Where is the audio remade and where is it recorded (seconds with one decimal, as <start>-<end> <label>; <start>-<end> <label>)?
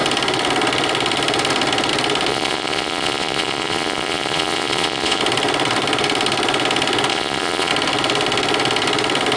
0.0-2.3 recorded; 2.3-5.2 remade; 5.2-7.1 recorded; 7.1-7.7 remade; 7.7-9.4 recorded